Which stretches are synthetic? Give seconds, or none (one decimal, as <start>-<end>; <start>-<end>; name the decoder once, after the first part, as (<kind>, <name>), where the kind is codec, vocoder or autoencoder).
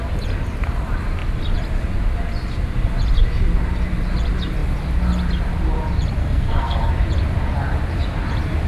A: 6.2-6.9 (codec, SNAC)